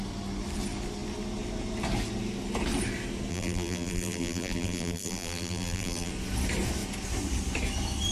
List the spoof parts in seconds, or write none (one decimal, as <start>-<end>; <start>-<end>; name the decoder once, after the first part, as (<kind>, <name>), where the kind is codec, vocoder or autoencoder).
3.3-6.1 (vocoder, BigVGAN v2)